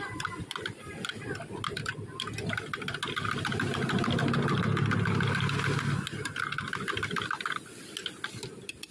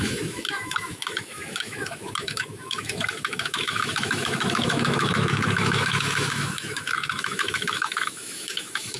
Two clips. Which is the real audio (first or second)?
first